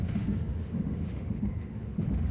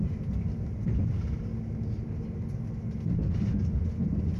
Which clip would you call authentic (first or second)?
second